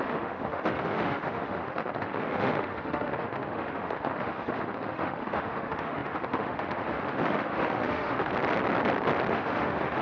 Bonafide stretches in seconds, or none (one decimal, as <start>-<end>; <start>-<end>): 8.3-9.3